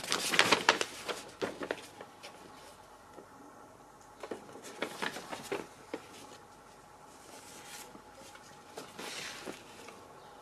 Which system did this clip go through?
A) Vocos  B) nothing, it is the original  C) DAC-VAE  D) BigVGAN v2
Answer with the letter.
B